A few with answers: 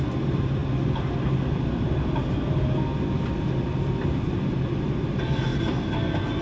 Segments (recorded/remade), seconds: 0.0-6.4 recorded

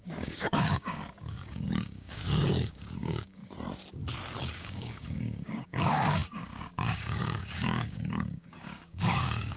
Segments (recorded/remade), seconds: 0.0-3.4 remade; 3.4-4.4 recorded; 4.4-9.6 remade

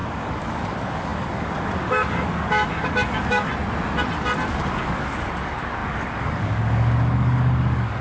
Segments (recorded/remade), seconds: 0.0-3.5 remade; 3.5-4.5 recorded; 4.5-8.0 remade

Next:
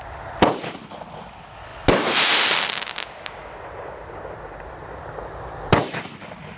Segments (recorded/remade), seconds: 0.0-6.6 recorded